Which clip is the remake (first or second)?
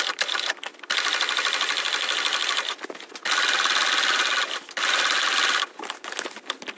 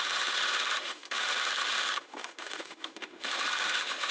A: second